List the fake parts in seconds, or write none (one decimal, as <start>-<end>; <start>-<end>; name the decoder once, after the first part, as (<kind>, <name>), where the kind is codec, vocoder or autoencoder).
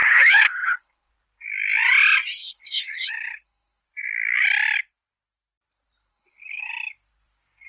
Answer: 0.0-1.1 (codec, HILCodec); 2.4-3.8; 6.1-6.7